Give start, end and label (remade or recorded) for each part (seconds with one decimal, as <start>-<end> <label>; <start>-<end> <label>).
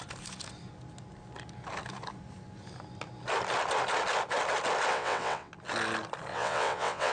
0.0-4.9 recorded; 4.9-5.5 remade; 5.5-6.3 recorded; 6.3-7.1 remade